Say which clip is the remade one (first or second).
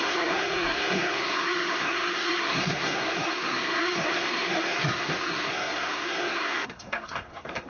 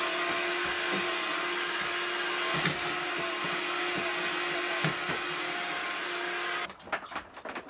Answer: first